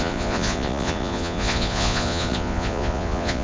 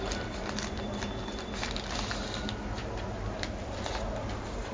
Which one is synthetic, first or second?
first